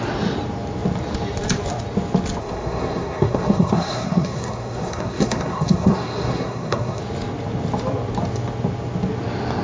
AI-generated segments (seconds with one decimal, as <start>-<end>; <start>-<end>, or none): 2.4-7.0